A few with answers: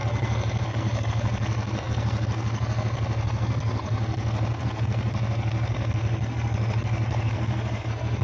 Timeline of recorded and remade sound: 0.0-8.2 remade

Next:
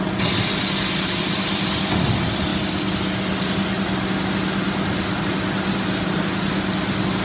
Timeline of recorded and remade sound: 0.0-7.2 recorded

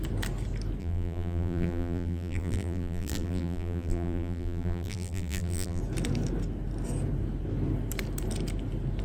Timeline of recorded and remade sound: 0.0-0.8 recorded; 0.8-5.8 remade; 5.8-9.0 recorded

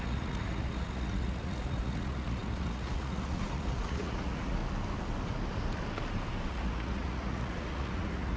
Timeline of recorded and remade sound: 0.0-4.6 remade; 4.6-6.5 recorded; 6.5-8.4 remade

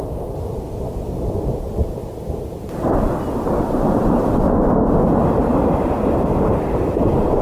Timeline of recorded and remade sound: 0.0-7.4 recorded

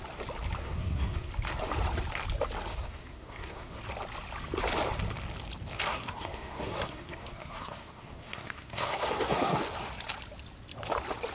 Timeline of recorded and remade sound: 0.0-0.6 recorded; 0.6-1.3 remade; 1.3-2.7 recorded; 2.7-3.8 remade; 3.8-5.9 recorded; 5.9-9.6 remade; 9.6-11.3 recorded

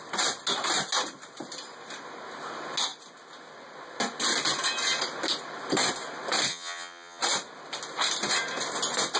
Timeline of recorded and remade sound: 0.0-6.5 recorded; 6.5-7.2 remade; 7.2-9.2 recorded